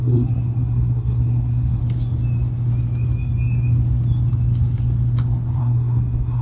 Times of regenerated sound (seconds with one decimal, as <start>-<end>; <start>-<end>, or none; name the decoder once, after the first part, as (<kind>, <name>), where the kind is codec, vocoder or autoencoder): 0.0-1.8 (codec, SNAC); 5.6-6.4